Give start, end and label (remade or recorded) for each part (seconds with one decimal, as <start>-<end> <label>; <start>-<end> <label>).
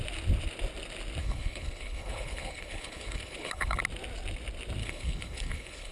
0.0-1.2 recorded; 1.2-3.8 remade; 3.8-4.8 recorded; 4.8-5.9 remade